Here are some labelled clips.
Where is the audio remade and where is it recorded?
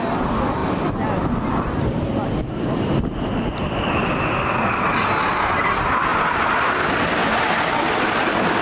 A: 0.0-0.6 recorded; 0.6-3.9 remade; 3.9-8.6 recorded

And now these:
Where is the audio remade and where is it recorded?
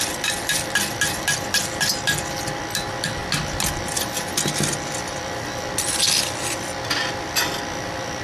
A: 0.0-8.2 recorded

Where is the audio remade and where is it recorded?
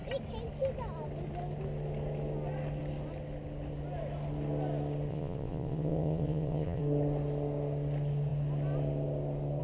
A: 0.0-5.1 recorded; 5.1-6.8 remade; 6.8-9.6 recorded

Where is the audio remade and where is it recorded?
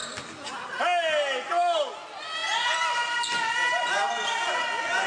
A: 0.0-5.1 recorded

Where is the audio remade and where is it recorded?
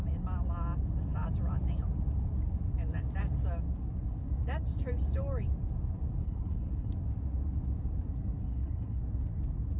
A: 0.0-6.2 recorded; 6.2-6.9 remade; 6.9-8.4 recorded; 8.4-9.0 remade; 9.0-9.8 recorded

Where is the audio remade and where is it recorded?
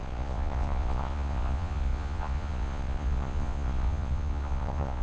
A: 0.0-5.0 remade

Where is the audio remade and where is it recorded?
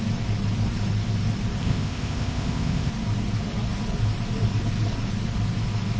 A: 0.0-1.6 recorded; 1.6-2.9 remade; 2.9-6.0 recorded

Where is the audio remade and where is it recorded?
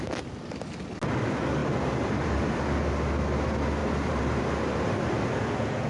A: 0.0-1.6 recorded; 1.6-2.6 remade; 2.6-3.8 recorded; 3.8-5.1 remade; 5.1-5.9 recorded